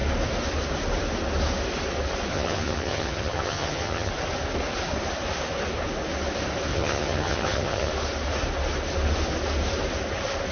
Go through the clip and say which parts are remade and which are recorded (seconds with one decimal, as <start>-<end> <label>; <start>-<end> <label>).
0.0-2.3 recorded; 2.3-4.1 remade; 4.1-6.7 recorded; 6.7-7.9 remade; 7.9-10.5 recorded